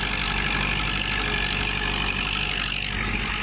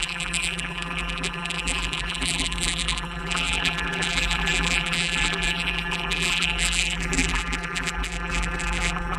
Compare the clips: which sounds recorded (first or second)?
first